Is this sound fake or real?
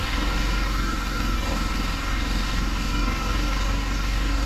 fake